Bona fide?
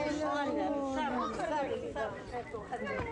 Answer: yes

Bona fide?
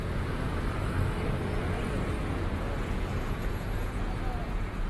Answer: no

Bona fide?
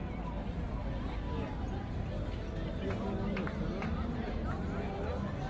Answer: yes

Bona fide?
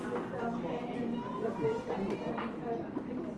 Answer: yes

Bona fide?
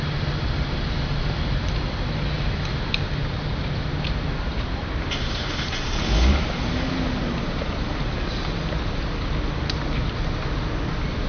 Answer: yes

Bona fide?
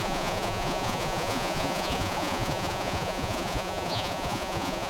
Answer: no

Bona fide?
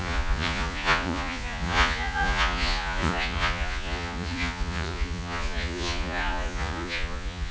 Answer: no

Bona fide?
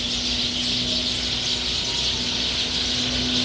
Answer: yes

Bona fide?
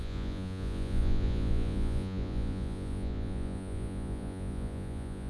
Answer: no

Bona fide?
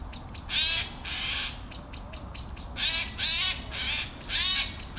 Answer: yes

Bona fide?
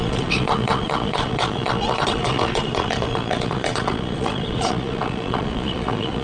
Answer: no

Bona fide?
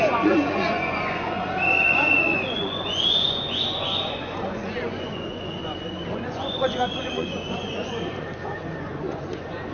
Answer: no